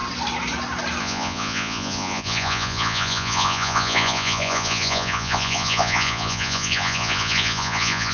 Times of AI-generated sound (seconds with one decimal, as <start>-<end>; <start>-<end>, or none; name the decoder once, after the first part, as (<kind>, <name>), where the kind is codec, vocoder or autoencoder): 1.0-8.1 (vocoder, Vocos)